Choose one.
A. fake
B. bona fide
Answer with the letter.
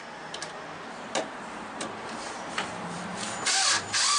A